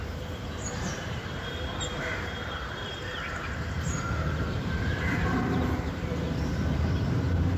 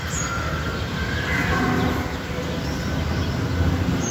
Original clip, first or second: second